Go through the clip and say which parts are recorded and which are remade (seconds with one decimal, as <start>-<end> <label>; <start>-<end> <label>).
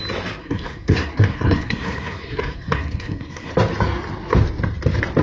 0.0-0.4 recorded; 0.4-3.5 remade; 3.5-5.2 recorded